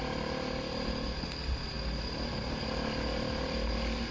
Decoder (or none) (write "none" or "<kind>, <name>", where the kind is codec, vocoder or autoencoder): none